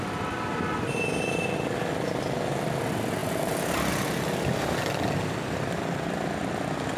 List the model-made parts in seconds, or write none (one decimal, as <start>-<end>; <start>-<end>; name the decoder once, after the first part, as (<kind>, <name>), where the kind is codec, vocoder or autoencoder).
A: 3.2-3.9 (vocoder, BigVGAN v2)